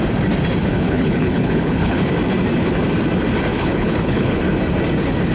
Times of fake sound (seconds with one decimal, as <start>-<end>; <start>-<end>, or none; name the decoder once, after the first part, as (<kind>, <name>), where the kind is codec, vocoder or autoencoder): 0.6-2.1 (codec, HILCodec); 3.5-4.4